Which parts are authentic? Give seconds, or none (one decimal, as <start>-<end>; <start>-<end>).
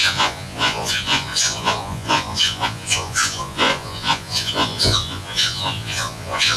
none